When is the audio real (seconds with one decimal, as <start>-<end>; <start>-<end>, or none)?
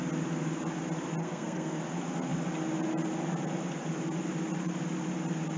0.0-1.2; 1.8-5.6